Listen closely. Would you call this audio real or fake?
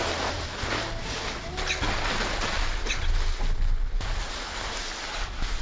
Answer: real